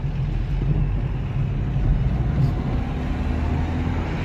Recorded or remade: recorded